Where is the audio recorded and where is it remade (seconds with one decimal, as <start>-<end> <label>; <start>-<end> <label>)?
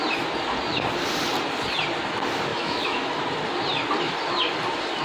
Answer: 0.0-2.5 recorded; 2.5-3.1 remade; 3.1-5.0 recorded